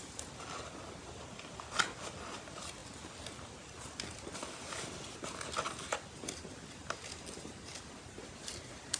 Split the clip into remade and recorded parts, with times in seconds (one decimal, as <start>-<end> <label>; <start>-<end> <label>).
0.0-9.0 recorded